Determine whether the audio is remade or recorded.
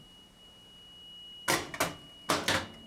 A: recorded